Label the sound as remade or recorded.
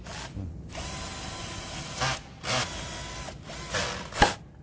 recorded